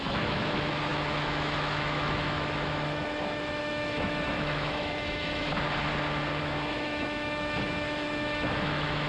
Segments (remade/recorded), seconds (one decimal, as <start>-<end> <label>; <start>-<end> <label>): 0.0-5.5 remade; 5.5-6.4 recorded; 6.4-9.1 remade